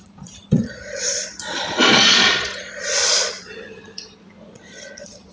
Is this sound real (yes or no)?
no